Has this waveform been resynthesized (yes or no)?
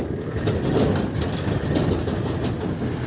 no